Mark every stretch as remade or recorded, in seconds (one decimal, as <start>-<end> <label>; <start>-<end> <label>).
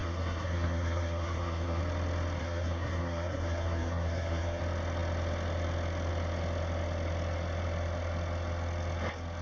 0.0-1.8 remade; 1.8-2.4 recorded; 2.4-4.6 remade; 4.6-9.4 recorded